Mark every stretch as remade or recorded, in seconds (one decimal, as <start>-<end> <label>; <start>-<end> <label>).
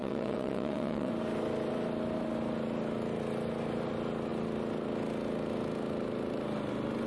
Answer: 0.0-1.1 remade; 1.1-7.1 recorded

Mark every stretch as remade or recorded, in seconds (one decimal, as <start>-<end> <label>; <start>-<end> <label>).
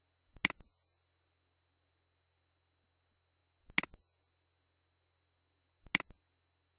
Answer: 0.0-6.8 recorded